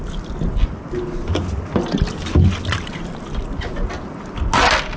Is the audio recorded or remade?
recorded